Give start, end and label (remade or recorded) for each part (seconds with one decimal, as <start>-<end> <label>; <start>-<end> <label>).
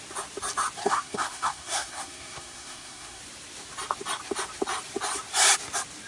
0.0-0.8 recorded; 0.8-3.2 remade; 3.2-6.1 recorded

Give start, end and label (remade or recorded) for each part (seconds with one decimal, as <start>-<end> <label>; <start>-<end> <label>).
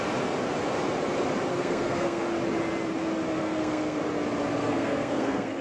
0.0-1.5 recorded; 1.5-2.2 remade; 2.2-3.4 recorded; 3.4-4.0 remade; 4.0-4.5 recorded; 4.5-5.6 remade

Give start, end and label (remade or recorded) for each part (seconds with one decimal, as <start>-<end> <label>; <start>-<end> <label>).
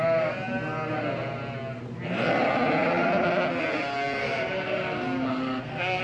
0.0-5.3 recorded; 5.3-6.0 remade